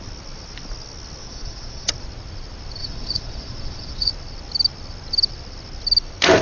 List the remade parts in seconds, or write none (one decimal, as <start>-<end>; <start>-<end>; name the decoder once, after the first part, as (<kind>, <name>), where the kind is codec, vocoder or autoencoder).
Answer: 1.2-1.9 (vocoder, Vocos); 2.8-4.1